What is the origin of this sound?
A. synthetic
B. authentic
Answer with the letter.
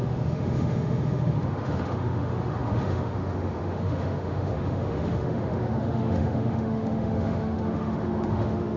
A